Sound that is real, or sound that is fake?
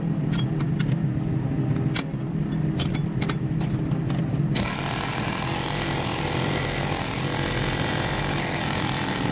real